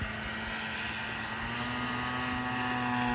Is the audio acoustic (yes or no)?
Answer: yes